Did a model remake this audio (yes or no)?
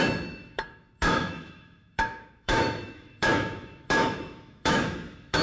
yes